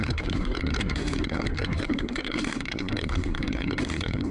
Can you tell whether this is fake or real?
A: fake